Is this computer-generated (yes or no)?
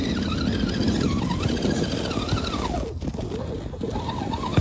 no